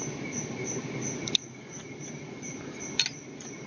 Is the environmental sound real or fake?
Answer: real